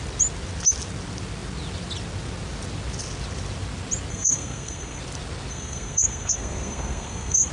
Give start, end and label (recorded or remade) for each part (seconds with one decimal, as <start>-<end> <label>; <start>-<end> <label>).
0.0-4.1 recorded; 4.1-5.0 remade; 5.0-5.5 recorded; 5.5-7.5 remade